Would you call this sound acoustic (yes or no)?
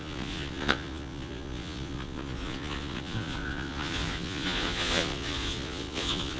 no